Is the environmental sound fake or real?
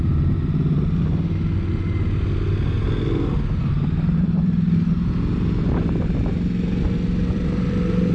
real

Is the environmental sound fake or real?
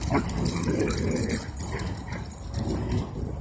real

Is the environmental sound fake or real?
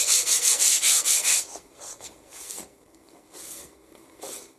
fake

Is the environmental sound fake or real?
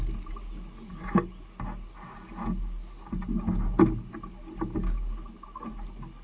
real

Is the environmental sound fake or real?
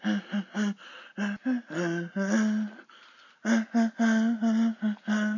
real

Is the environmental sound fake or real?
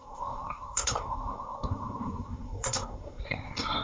fake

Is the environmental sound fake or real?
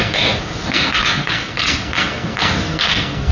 fake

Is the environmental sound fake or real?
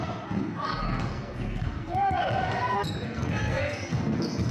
fake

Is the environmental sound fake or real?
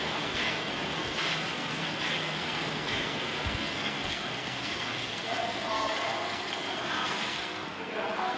fake